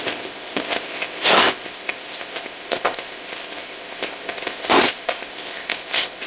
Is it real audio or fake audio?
fake